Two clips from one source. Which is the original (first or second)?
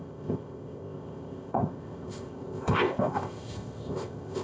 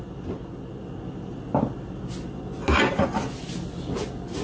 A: second